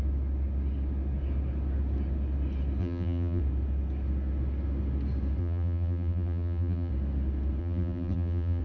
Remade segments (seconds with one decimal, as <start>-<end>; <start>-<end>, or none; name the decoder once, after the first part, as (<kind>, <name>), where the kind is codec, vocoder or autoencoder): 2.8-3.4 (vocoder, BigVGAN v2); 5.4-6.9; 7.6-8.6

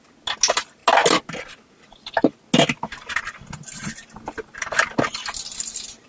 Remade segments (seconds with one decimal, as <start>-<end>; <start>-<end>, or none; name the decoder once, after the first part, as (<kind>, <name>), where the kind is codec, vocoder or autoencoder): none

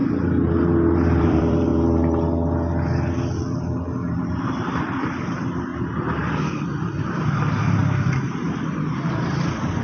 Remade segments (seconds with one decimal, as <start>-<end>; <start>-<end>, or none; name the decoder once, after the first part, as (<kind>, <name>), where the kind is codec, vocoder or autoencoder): 1.2-1.7 (vocoder, BigVGAN v2); 3.6-5.7; 6.5-7.8; 8.3-9.8

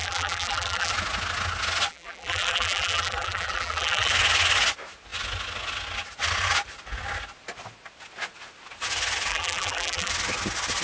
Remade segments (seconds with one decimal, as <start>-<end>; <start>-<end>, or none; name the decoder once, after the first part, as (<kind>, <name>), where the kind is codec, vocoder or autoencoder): 0.0-0.9 (vocoder, BigVGAN v2); 1.9-4.1; 9.3-10.1

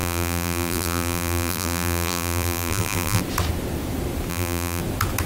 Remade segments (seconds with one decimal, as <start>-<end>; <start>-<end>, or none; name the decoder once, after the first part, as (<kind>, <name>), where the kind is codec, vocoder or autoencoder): 0.0-3.2 (vocoder, BigVGAN v2); 4.3-4.8

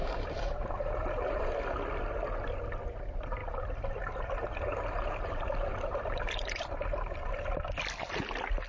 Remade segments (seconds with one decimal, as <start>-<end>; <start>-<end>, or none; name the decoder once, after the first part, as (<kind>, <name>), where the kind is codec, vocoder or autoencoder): 0.0-0.9 (vocoder, BigVGAN v2); 3.4-7.3